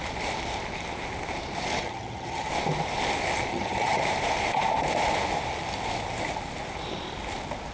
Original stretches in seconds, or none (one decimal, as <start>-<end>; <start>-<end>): 0.0-1.8; 2.5-3.5; 4.0-7.7